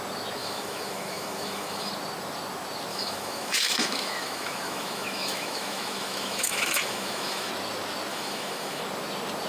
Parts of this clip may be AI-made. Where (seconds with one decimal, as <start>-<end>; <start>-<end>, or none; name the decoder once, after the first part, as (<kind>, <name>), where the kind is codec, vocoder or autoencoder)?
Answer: 0.4-1.9 (autoencoder, DAC-VAE); 2.9-7.5; 8.1-8.8